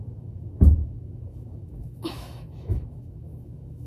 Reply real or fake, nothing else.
fake